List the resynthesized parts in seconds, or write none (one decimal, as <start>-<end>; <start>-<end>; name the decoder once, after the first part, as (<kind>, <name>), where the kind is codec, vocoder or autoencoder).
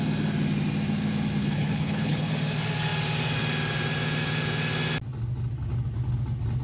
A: 1.4-2.3 (codec, HILCodec)